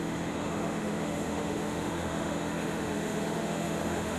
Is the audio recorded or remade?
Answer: remade